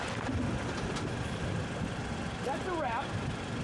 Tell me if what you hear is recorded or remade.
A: recorded